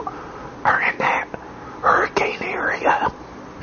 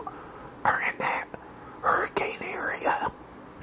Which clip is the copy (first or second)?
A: first